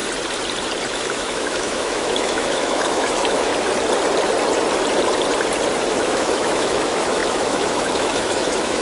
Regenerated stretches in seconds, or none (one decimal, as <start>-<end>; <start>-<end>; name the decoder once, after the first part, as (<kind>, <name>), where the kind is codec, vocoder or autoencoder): 0.9-3.5 (autoencoder, DAC-VAE); 5.9-8.8